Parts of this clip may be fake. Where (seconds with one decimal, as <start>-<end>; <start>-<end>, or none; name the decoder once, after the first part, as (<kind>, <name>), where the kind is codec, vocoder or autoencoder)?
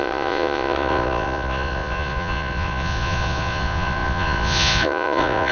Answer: 0.0-5.5 (vocoder, Vocos)